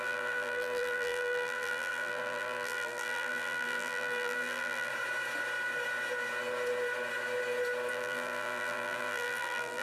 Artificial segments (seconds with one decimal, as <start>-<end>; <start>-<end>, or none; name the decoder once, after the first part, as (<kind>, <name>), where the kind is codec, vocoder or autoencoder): 0.0-4.9 (vocoder, BigVGAN v2); 7.9-9.8